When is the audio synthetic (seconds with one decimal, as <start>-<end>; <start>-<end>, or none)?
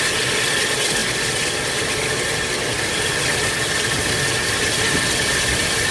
none